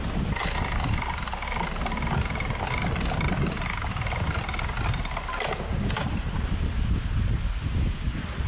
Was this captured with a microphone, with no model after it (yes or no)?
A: yes